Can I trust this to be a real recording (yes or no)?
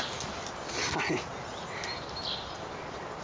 yes